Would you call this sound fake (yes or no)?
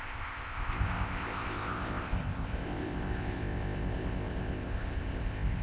yes